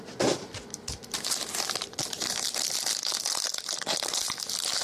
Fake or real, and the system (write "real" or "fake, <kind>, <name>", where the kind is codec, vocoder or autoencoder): real